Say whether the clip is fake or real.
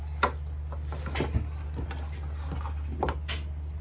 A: real